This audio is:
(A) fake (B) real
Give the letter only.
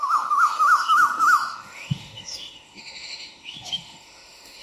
A